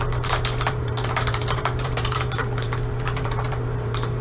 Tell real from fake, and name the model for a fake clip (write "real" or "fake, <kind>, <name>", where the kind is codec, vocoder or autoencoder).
fake, vocoder, BigVGAN v2